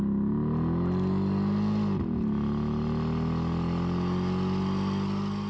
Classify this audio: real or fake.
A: real